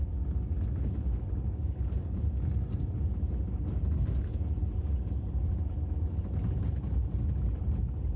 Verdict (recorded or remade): recorded